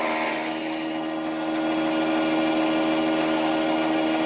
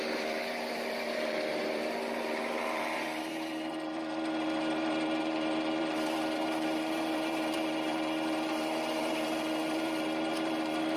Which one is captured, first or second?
first